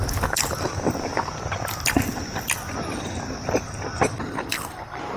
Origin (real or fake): fake